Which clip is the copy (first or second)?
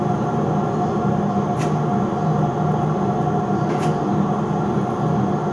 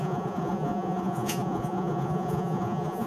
second